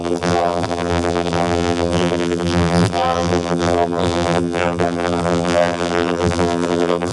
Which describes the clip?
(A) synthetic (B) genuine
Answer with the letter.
A